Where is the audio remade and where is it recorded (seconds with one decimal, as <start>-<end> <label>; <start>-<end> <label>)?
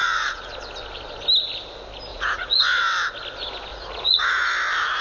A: 0.0-0.5 remade; 0.5-2.1 recorded; 2.1-2.8 remade; 2.8-3.7 recorded; 3.7-4.5 remade; 4.5-5.0 recorded